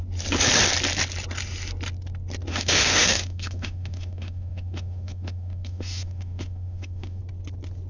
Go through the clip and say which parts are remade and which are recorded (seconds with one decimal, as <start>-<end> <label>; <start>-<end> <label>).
0.0-2.5 recorded; 2.5-7.2 remade; 7.2-7.9 recorded